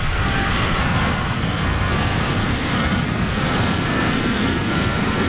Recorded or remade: remade